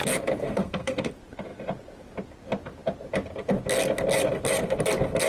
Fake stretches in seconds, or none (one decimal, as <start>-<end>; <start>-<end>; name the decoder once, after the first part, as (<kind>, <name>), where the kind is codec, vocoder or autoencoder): 0.4-1.1 (codec, SNAC)